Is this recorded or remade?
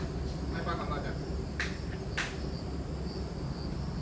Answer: recorded